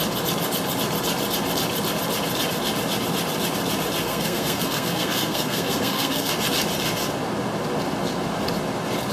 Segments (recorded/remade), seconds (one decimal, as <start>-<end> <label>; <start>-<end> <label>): 0.0-4.0 recorded; 4.0-6.3 remade; 6.3-9.1 recorded